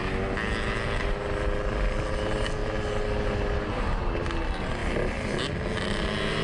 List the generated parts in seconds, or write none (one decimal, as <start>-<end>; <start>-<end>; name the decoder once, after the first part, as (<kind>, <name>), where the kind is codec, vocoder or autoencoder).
4.8-5.4 (vocoder, BigVGAN v2)